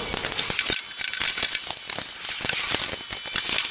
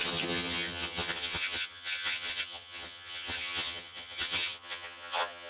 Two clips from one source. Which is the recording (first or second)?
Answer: first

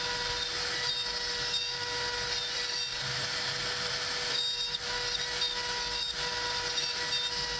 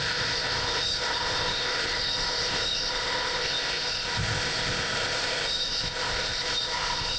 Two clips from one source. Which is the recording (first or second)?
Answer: first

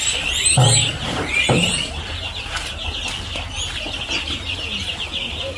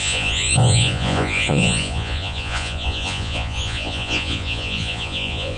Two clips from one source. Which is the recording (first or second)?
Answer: first